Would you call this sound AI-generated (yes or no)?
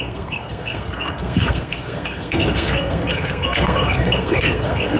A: yes